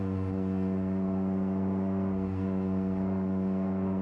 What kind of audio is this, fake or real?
fake